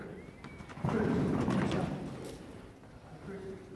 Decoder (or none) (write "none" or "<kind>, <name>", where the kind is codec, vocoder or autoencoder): none